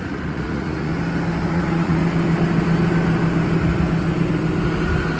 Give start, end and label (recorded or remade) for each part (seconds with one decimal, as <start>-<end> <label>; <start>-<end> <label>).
0.0-0.9 remade; 0.9-1.5 recorded; 1.5-2.0 remade; 2.0-5.2 recorded